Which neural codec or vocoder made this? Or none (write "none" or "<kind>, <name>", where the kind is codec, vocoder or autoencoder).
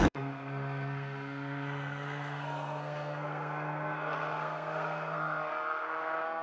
codec, SNAC